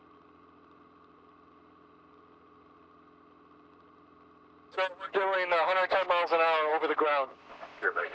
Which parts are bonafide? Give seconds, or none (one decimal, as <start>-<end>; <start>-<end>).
0.0-8.1